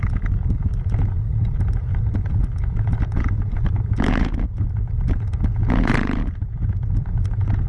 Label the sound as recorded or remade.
remade